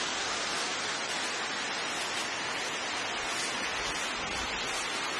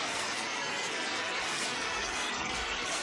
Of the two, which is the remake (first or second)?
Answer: second